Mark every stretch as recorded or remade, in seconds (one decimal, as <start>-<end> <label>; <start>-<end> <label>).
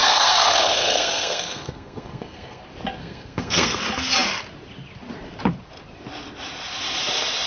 0.0-2.6 remade; 2.6-3.0 recorded; 3.0-3.8 remade; 3.8-7.5 recorded